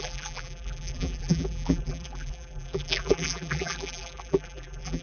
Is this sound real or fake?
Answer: fake